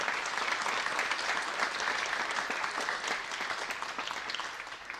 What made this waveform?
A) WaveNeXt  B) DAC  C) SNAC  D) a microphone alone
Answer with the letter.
D